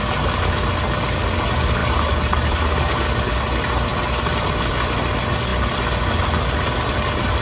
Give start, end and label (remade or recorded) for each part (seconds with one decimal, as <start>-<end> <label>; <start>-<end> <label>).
0.0-7.4 recorded